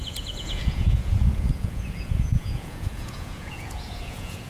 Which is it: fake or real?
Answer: fake